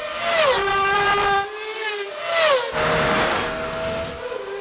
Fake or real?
real